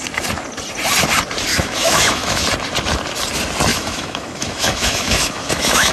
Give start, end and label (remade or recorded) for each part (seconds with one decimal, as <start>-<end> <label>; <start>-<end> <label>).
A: 0.0-1.5 recorded; 1.5-2.4 remade; 2.4-3.7 recorded; 3.7-5.9 remade